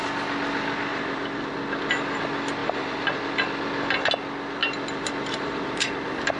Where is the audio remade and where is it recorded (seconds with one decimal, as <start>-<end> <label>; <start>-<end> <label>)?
0.0-0.9 recorded; 0.9-1.5 remade; 1.5-2.6 recorded; 2.6-3.2 remade; 3.2-4.6 recorded; 4.6-6.4 remade